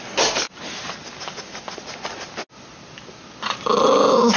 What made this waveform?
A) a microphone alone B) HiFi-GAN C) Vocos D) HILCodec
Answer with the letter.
A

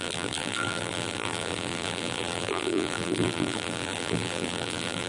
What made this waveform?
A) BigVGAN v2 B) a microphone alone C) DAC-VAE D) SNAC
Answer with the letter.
A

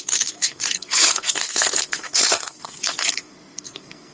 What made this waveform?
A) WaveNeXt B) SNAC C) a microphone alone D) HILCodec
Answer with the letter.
B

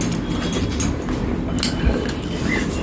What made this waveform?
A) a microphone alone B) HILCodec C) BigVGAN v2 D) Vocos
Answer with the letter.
A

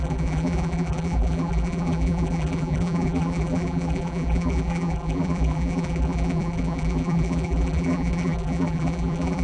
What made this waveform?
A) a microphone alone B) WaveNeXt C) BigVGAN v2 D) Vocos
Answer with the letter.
C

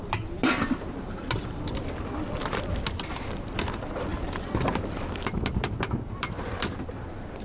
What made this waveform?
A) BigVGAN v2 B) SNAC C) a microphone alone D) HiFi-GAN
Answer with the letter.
A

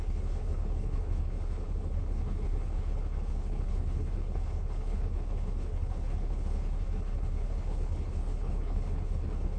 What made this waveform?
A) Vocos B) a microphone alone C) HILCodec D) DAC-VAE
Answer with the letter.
C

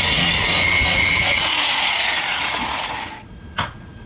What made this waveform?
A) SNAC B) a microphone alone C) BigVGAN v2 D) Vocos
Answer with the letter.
D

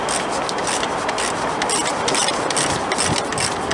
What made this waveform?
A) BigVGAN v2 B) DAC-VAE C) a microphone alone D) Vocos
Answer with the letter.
C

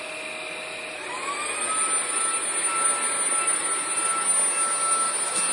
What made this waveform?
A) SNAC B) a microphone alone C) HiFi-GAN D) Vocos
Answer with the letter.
B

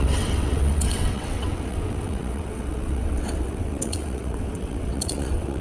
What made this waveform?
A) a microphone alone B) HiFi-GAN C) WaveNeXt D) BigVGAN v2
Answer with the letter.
C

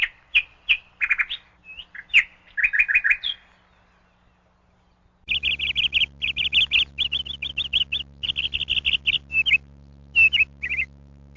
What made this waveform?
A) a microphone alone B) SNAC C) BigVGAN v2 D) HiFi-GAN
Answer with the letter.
A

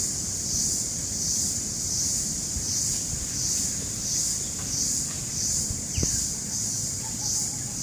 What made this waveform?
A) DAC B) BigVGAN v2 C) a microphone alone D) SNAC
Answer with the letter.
B